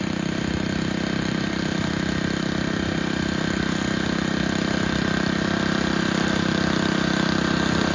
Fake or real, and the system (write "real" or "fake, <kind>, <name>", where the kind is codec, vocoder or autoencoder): real